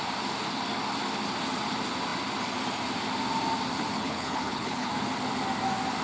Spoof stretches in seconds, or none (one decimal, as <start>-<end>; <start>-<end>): 3.9-4.9